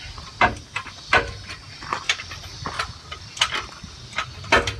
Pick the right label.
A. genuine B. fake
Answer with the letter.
A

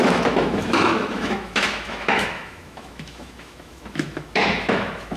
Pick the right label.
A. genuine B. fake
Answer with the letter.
B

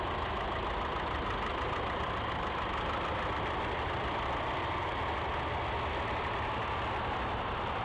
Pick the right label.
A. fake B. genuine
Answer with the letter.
B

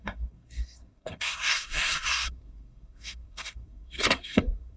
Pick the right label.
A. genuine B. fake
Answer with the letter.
B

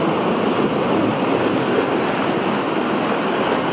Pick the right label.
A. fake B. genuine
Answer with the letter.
B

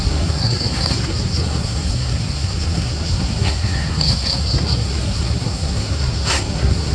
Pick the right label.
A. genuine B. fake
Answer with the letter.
B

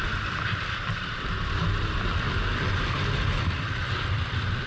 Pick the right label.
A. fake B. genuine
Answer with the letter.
A